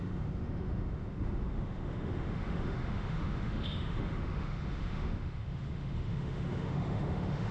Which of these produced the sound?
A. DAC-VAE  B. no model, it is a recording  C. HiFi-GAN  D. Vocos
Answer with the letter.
A